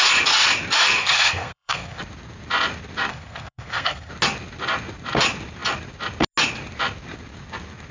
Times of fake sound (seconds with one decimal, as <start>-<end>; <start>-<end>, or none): 1.0-2.0; 3.1-4.1